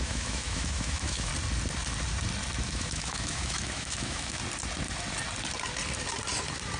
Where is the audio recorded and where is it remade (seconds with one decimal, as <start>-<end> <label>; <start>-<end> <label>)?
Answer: 0.0-1.3 remade; 1.3-2.6 recorded; 2.6-4.4 remade; 4.4-6.8 recorded